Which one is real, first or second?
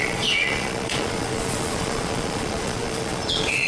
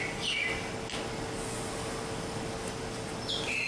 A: second